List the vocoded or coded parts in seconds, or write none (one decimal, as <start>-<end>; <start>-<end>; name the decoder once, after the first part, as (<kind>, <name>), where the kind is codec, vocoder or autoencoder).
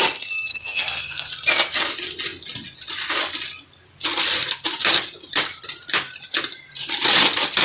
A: 0.5-1.3 (codec, SNAC)